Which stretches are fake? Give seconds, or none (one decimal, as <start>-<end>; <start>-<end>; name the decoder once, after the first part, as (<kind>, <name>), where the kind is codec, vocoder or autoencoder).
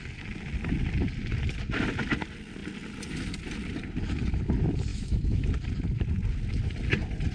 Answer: 4.9-5.5 (autoencoder, DAC-VAE)